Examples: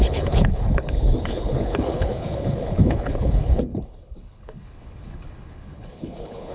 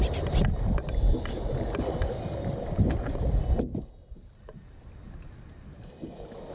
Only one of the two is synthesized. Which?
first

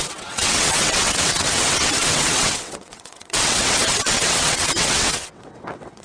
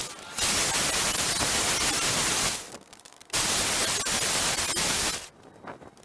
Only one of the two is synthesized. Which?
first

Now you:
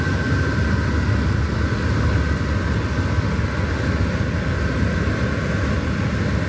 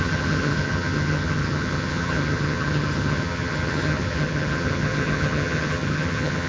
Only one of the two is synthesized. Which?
second